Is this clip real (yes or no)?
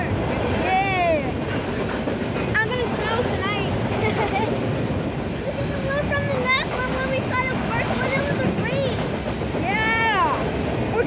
yes